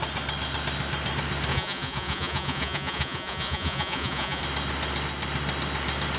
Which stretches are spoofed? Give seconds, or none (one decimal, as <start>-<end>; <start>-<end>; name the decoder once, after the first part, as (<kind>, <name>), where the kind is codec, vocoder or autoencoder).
1.5-4.4 (vocoder, Vocos)